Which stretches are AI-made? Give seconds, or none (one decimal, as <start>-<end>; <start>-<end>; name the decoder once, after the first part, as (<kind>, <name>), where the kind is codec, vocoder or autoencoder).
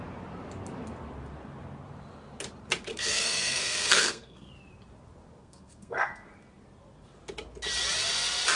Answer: 2.9-4.5 (codec, SNAC); 5.4-6.3